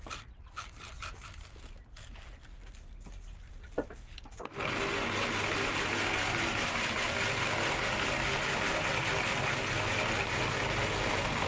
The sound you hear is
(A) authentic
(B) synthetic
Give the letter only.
A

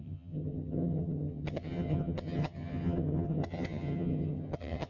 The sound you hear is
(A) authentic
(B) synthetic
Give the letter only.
B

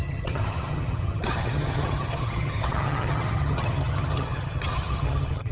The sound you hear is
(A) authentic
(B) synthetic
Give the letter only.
B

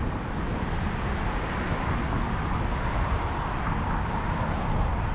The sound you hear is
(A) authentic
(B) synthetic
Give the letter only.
A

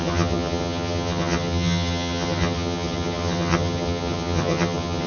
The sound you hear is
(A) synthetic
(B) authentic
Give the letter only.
A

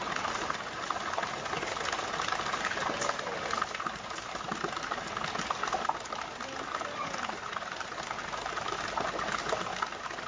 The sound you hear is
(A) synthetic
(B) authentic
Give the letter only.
B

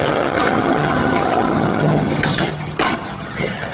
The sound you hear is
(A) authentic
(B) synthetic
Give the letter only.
B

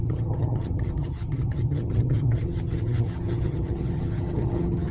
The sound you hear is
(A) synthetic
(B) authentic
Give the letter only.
A